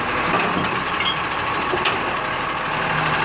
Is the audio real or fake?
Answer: real